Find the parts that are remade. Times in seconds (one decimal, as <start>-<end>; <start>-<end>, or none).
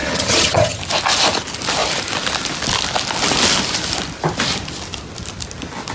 0.0-0.8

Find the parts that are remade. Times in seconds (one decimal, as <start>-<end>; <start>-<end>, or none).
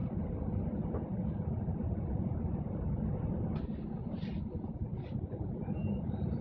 none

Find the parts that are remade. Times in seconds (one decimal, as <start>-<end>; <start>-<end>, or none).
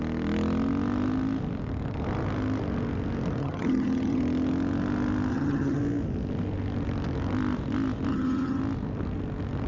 3.4-4.2; 5.3-5.8; 8.1-8.6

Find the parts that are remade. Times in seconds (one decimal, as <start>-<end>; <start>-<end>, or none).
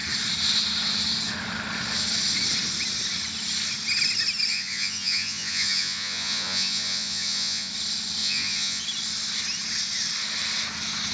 4.5-7.7; 8.2-8.8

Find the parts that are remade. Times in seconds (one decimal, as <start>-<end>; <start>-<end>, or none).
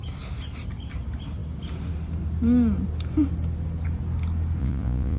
4.6-5.2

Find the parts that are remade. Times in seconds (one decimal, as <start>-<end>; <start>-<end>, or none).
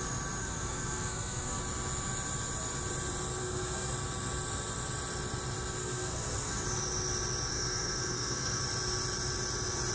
0.4-1.6; 3.4-3.9; 5.8-6.6; 7.5-8.6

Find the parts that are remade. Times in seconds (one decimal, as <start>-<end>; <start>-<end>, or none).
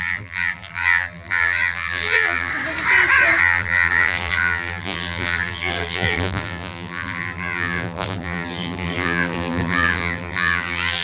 0.0-2.5; 3.4-11.0